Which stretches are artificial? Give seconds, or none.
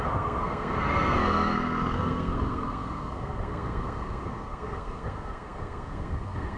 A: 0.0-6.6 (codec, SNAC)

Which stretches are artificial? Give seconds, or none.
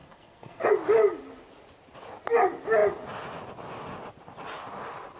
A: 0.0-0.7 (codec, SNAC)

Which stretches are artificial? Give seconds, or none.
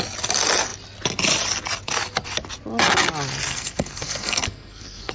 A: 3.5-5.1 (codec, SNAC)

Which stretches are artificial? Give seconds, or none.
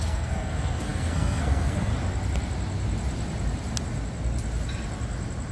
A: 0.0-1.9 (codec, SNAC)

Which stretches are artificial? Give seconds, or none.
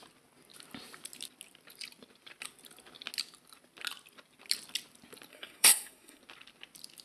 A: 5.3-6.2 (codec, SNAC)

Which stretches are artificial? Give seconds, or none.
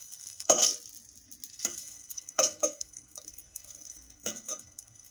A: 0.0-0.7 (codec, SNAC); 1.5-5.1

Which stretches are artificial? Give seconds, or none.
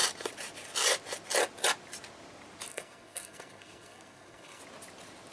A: 2.7-4.6 (codec, SNAC)